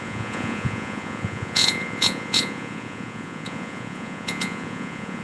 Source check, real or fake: fake